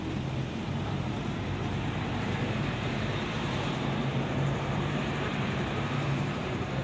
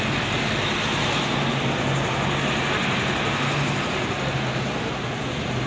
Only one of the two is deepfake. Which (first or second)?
first